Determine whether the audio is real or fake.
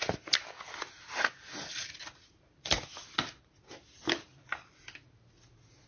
real